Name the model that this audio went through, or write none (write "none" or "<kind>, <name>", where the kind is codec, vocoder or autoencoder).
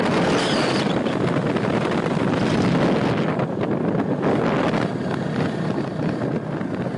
none